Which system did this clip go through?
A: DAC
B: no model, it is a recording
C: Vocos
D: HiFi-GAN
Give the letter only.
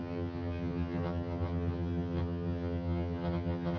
D